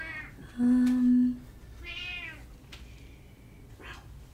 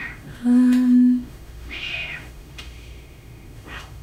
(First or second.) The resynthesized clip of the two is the second